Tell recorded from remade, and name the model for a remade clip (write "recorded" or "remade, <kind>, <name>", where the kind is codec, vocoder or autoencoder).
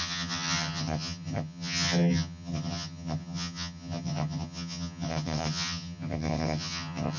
remade, vocoder, HiFi-GAN